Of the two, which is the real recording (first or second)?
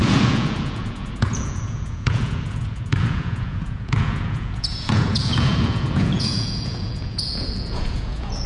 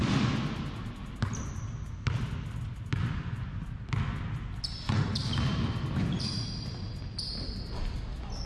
second